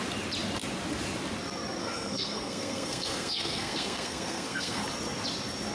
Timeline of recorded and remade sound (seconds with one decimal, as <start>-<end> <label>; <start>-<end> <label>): 0.0-1.8 recorded; 1.8-4.8 remade; 4.8-5.7 recorded